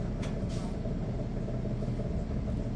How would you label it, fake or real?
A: real